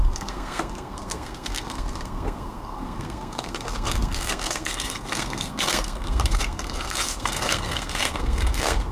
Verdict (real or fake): fake